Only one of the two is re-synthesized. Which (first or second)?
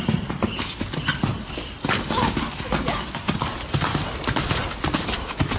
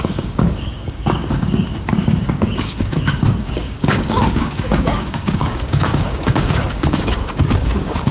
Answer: second